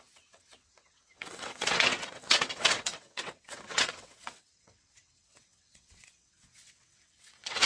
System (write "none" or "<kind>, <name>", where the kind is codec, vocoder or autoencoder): vocoder, WaveNeXt